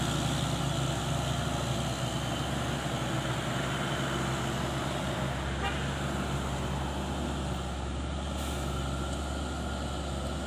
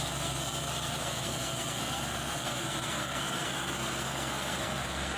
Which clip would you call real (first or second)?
first